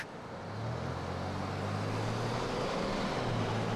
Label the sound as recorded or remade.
recorded